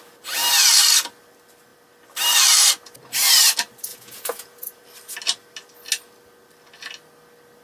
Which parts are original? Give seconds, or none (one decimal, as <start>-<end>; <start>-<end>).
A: 0.0-3.9; 4.8-7.6